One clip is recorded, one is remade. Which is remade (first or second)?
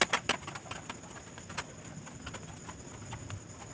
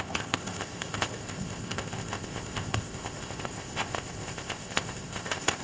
second